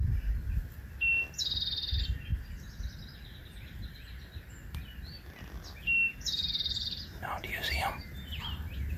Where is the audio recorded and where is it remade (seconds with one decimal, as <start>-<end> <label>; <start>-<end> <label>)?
0.0-3.4 recorded; 3.4-3.9 remade; 3.9-6.1 recorded; 6.1-8.4 remade; 8.4-9.0 recorded